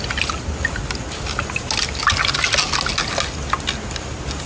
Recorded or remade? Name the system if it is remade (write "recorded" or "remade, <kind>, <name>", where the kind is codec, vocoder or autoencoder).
recorded